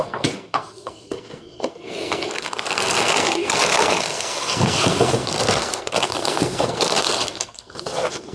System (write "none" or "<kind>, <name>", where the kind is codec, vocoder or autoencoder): codec, SNAC